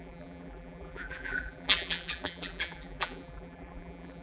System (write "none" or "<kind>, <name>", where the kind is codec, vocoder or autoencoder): vocoder, BigVGAN v2